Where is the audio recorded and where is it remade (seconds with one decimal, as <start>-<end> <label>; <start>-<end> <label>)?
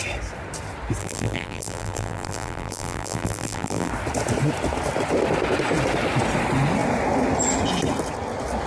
0.0-1.0 recorded; 1.0-3.9 remade; 3.9-8.7 recorded